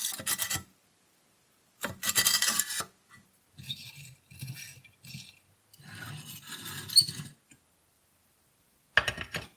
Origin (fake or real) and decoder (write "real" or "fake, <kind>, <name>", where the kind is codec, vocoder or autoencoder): real